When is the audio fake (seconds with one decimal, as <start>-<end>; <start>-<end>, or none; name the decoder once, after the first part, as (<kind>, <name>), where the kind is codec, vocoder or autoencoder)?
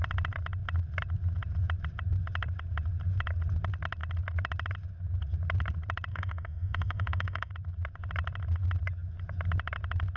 6.1-7.5 (autoencoder, DAC-VAE)